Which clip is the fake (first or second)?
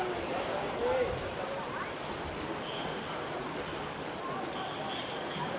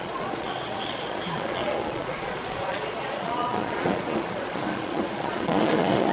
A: second